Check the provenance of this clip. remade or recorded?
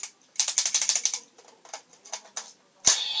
recorded